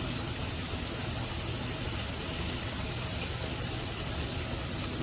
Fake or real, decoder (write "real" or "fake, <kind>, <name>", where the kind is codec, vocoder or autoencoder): real